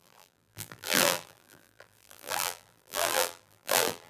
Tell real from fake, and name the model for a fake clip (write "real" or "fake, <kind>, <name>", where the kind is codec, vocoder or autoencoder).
fake, vocoder, BigVGAN v2